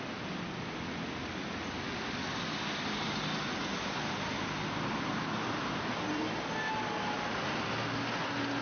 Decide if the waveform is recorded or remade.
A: recorded